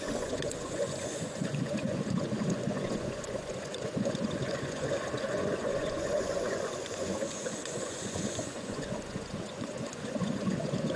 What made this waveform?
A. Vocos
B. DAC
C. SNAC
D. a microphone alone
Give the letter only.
A